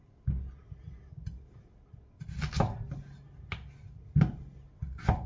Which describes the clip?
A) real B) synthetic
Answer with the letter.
A